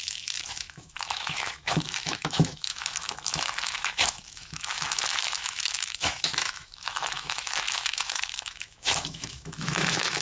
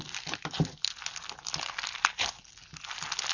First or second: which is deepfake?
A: first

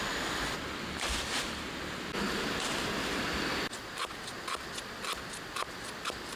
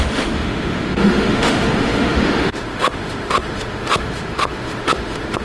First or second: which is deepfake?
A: second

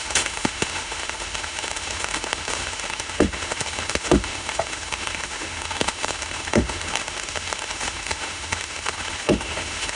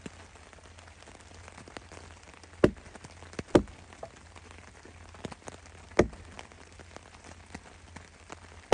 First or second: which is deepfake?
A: first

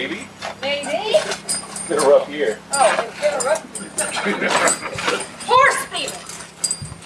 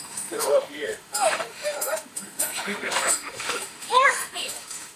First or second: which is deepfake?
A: second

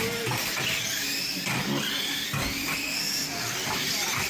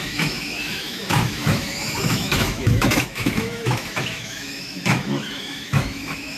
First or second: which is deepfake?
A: second